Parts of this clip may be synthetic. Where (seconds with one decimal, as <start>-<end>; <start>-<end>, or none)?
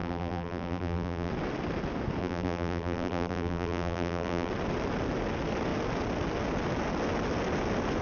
0.0-1.3; 2.2-4.5